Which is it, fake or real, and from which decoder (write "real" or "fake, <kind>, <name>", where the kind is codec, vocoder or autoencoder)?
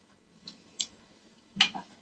fake, autoencoder, DAC-VAE